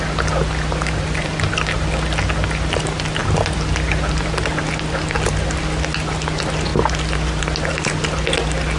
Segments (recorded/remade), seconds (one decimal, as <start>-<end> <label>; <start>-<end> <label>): 0.0-8.8 recorded